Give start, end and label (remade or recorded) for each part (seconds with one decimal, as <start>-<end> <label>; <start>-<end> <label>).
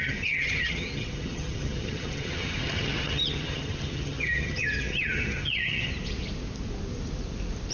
0.0-5.9 remade; 5.9-7.7 recorded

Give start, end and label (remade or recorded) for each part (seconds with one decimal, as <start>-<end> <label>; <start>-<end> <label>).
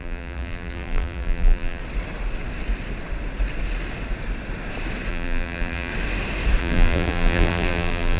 0.0-1.8 remade; 1.8-5.1 recorded; 5.1-5.9 remade; 5.9-6.6 recorded; 6.6-8.2 remade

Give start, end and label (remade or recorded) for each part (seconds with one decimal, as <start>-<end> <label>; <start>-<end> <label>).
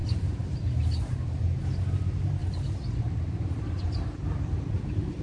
0.0-1.4 remade; 1.4-2.4 recorded; 2.4-3.6 remade; 3.6-5.2 recorded